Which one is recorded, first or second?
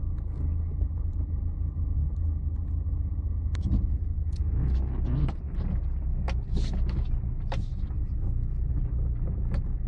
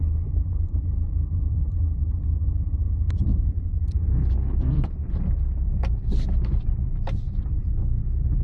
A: first